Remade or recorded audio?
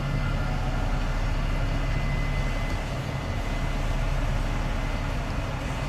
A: recorded